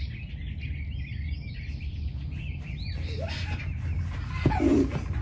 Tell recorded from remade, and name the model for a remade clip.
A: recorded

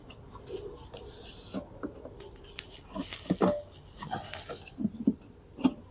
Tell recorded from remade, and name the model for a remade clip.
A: recorded